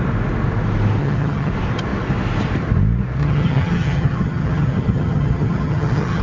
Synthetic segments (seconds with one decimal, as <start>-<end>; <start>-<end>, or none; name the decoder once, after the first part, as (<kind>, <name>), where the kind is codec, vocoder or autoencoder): 1.0-1.5 (vocoder, HiFi-GAN); 3.2-6.2